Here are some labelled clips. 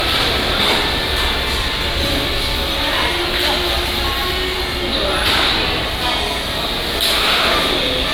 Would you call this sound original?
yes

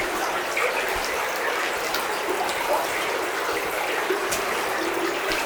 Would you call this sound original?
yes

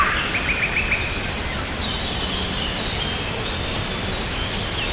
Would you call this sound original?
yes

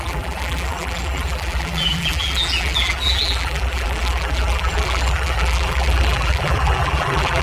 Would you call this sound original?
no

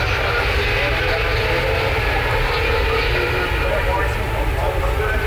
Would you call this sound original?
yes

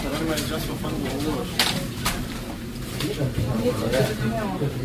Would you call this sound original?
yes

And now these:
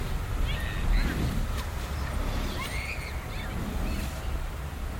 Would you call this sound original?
yes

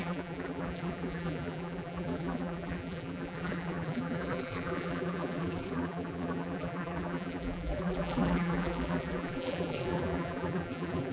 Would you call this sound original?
no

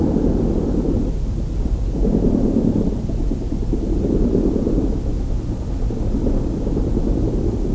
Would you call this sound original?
yes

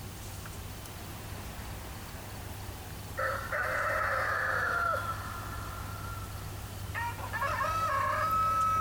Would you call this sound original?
yes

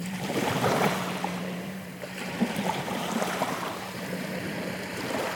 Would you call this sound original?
no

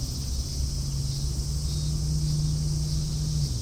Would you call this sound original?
yes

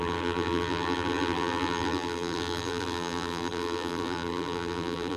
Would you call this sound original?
no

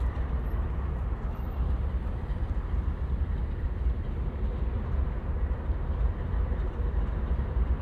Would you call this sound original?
no